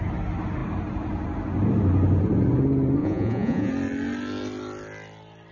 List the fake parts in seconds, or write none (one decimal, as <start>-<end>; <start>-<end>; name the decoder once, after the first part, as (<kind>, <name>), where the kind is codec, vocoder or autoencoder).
3.0-3.7 (vocoder, Vocos)